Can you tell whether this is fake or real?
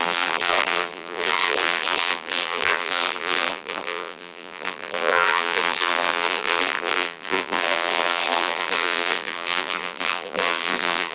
fake